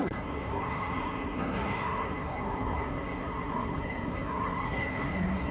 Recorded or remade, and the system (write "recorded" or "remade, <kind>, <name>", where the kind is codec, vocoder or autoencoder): remade, codec, SNAC